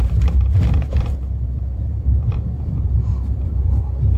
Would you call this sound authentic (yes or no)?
no